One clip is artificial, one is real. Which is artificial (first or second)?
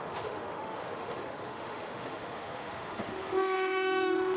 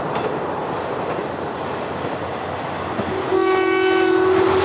first